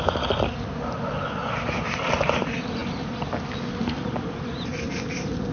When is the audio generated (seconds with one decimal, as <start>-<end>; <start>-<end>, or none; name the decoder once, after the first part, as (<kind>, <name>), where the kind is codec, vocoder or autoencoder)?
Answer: none